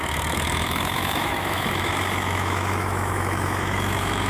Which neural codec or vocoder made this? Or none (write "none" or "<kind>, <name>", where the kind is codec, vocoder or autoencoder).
autoencoder, DAC-VAE